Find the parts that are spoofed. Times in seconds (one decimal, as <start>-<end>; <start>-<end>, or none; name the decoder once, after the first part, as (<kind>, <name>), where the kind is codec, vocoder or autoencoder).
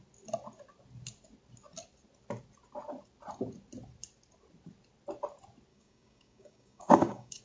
5.7-7.4 (codec, DAC)